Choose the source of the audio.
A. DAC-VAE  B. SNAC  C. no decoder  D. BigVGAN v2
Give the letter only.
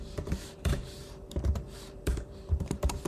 D